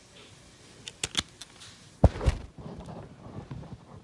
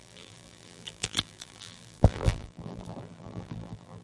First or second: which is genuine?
first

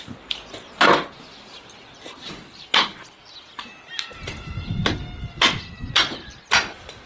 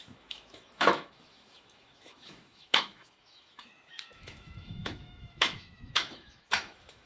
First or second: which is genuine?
first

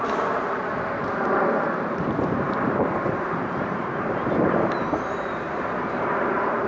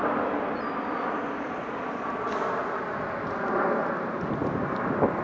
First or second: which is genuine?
second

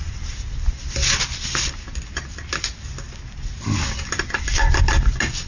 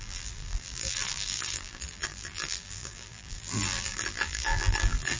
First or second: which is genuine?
first